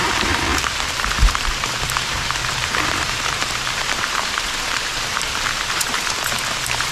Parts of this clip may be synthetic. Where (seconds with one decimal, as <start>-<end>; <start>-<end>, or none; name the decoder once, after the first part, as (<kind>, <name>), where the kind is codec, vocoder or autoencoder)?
0.0-6.9 (vocoder, BigVGAN v2)